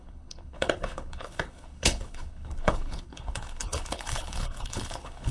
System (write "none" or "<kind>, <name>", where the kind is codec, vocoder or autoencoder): codec, HILCodec